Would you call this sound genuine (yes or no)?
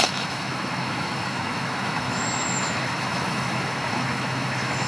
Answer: no